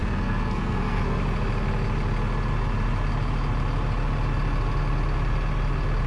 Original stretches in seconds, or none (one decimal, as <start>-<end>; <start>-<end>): 1.2-6.1